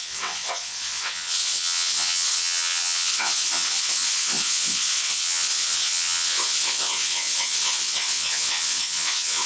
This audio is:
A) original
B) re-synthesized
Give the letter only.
B